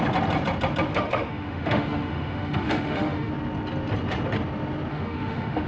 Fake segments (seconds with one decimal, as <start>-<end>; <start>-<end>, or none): 0.9-3.3; 4.9-5.7